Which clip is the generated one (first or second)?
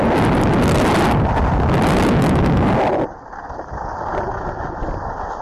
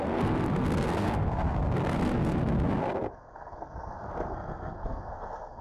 second